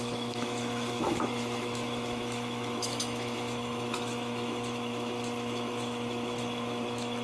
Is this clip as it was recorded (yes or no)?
no